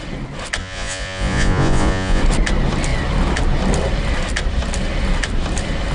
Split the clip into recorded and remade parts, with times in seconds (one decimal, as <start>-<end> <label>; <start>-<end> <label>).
0.0-0.6 recorded; 0.6-2.2 remade; 2.2-5.9 recorded